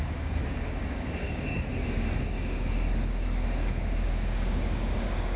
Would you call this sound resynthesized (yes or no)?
yes